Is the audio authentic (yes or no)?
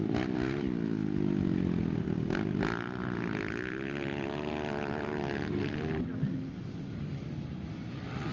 yes